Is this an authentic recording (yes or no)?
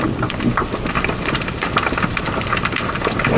yes